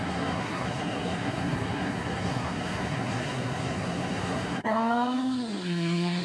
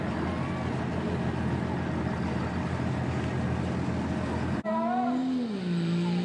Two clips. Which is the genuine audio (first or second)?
second